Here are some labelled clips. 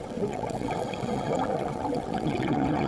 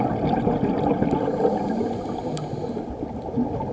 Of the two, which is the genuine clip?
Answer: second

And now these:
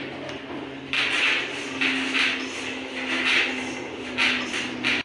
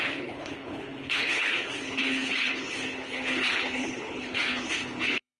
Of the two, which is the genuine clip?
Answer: first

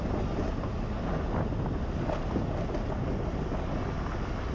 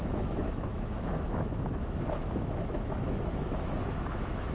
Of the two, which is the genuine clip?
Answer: first